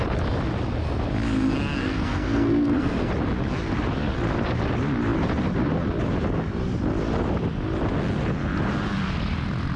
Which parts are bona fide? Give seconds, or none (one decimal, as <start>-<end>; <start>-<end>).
0.0-1.8; 3.1-9.8